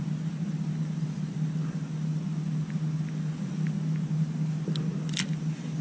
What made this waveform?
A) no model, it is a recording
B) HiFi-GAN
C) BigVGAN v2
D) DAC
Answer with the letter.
A